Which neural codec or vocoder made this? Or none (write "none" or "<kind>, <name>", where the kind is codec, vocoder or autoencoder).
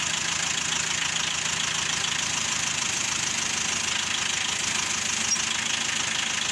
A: none